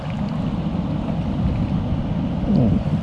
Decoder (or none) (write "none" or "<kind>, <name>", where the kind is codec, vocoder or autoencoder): none